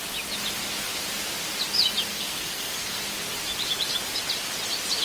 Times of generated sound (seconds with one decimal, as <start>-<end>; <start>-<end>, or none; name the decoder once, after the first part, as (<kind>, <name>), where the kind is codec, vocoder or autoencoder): 2.1-3.0 (codec, SNAC)